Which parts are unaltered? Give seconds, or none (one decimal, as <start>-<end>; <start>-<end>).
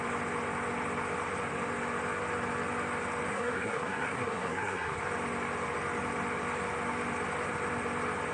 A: 0.0-3.3; 5.0-8.3